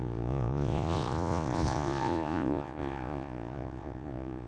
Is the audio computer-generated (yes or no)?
yes